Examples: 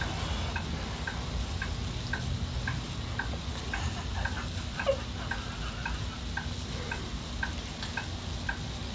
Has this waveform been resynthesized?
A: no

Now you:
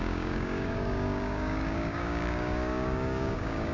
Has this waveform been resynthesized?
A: yes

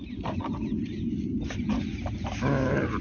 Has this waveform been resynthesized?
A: no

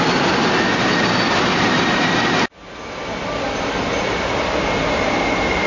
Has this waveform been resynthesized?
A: no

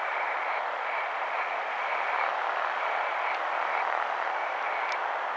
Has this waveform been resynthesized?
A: no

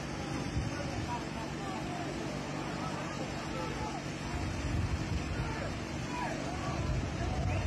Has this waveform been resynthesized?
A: no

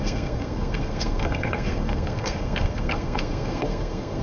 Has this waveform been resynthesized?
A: yes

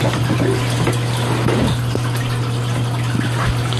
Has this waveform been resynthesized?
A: no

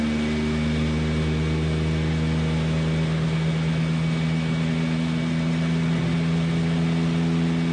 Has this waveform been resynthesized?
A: no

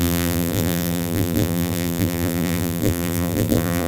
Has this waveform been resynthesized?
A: yes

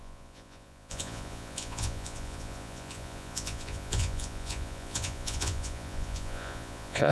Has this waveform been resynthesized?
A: yes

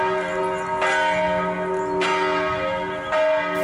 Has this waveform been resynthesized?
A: no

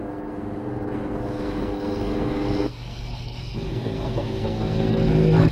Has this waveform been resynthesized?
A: yes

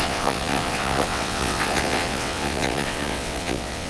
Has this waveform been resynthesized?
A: yes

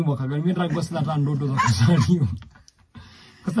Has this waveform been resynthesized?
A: no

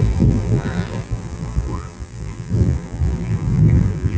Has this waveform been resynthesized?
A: yes